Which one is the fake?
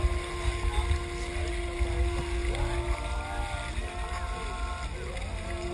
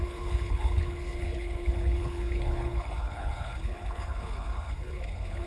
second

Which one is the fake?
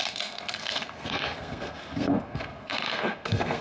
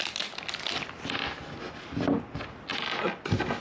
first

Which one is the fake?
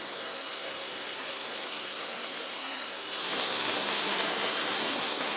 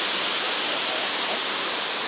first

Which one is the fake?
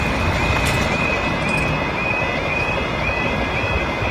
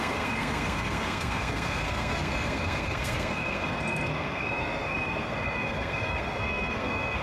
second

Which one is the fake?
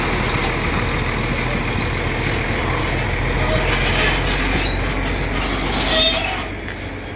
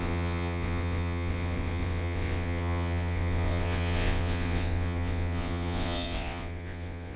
second